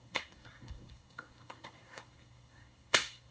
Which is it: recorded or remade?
remade